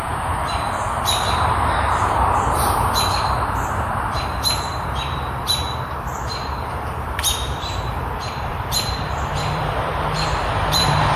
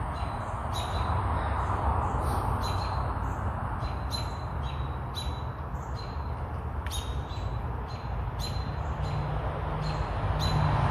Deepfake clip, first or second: first